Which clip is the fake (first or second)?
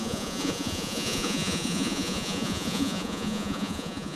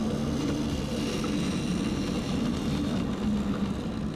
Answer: first